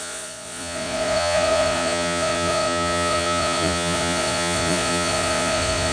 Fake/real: fake